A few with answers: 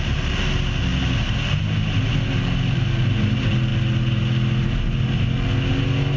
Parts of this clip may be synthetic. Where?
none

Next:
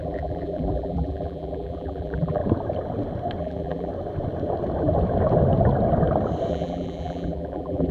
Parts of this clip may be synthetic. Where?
0.0-2.4 (vocoder, BigVGAN v2); 3.4-3.9; 6.5-7.9

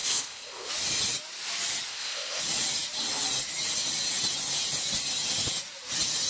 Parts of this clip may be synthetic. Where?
0.0-0.7 (codec, ZipCodec); 1.9-2.4

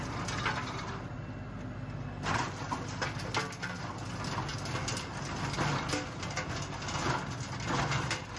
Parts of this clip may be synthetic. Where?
none

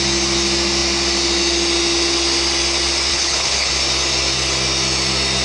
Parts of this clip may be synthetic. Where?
3.1-3.7 (codec, HILCodec)